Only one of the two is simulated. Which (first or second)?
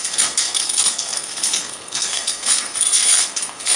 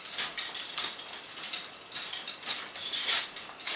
first